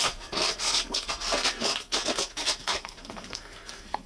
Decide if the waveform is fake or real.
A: fake